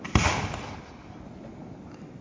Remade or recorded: recorded